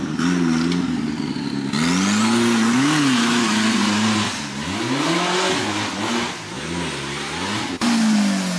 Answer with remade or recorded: recorded